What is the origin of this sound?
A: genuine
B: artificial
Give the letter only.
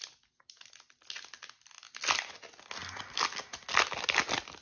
A